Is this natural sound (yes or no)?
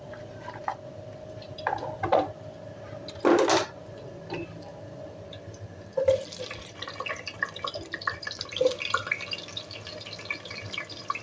no